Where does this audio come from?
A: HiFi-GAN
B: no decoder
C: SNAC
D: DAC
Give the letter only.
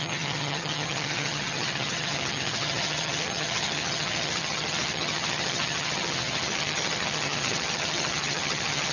A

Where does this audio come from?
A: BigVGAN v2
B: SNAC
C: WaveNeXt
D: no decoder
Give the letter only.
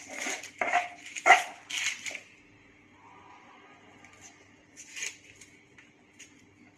D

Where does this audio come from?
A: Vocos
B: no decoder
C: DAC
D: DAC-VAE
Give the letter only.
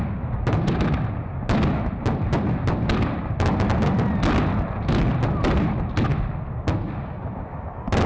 B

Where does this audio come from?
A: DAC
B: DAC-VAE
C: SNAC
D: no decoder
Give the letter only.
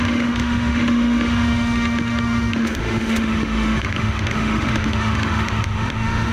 B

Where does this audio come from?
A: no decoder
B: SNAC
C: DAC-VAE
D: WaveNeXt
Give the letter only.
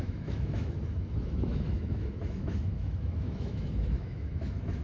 C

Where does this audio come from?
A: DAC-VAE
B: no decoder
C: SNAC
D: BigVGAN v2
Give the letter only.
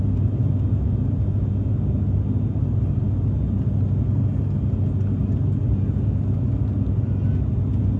B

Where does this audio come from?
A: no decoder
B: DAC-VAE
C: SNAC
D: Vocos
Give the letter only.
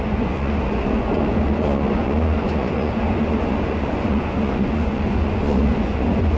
D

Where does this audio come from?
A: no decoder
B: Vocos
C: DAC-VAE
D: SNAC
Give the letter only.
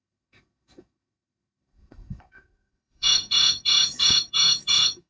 C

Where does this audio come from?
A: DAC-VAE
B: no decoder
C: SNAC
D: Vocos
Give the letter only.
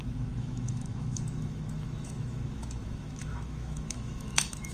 A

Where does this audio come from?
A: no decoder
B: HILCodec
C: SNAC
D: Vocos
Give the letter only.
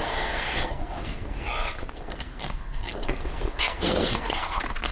C